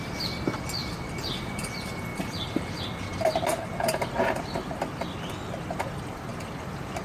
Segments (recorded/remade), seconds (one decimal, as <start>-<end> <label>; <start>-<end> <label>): 0.0-2.1 recorded; 2.1-2.7 remade; 2.7-3.5 recorded; 3.5-4.0 remade; 4.0-7.0 recorded